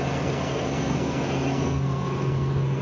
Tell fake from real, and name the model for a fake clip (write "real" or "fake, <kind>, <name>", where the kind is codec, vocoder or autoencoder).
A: fake, codec, SNAC